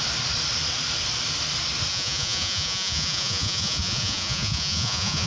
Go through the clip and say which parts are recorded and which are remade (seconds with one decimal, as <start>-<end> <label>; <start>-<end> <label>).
0.0-1.9 recorded; 1.9-5.3 remade